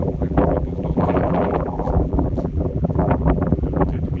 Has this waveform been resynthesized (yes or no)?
yes